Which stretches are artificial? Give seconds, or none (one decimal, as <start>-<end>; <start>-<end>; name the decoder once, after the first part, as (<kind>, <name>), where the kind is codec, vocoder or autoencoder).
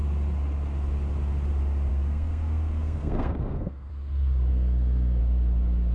1.9-3.9 (codec, SNAC); 4.5-5.2